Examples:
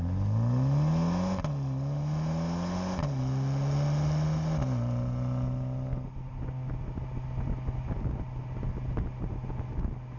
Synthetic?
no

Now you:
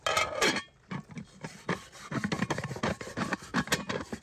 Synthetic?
no